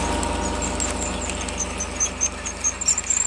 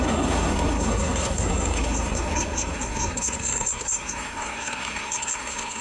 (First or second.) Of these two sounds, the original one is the first